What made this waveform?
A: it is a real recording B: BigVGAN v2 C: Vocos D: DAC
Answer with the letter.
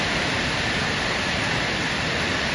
A